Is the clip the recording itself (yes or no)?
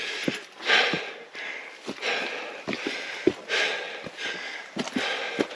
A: yes